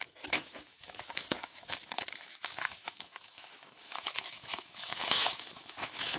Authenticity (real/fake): fake